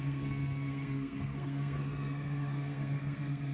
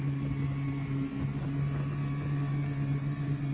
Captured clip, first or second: second